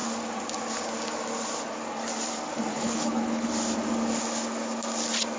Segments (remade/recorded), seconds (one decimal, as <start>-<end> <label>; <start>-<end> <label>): 0.0-2.7 recorded; 2.7-3.5 remade; 3.5-5.4 recorded